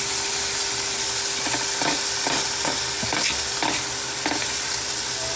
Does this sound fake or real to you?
real